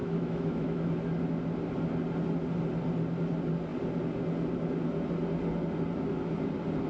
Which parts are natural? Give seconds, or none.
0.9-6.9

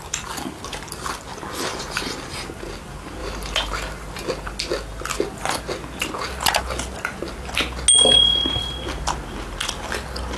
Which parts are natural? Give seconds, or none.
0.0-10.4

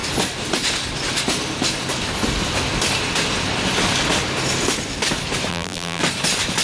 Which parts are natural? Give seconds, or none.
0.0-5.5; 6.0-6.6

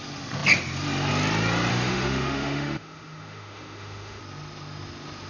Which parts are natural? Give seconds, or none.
0.0-1.7; 4.2-5.3

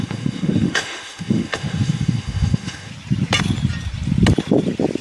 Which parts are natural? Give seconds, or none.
2.9-5.0

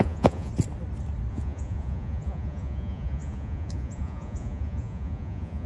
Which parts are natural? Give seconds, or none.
0.5-1.3